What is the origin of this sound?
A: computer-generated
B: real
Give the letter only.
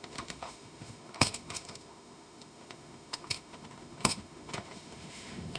A